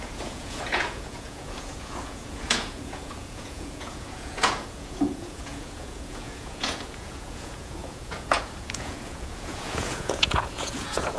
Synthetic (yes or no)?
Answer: yes